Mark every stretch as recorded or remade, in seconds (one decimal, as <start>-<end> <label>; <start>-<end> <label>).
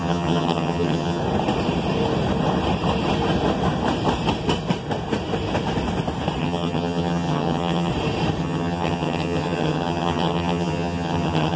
0.0-1.2 remade; 1.2-6.4 recorded; 6.4-7.9 remade; 7.9-8.4 recorded; 8.4-11.6 remade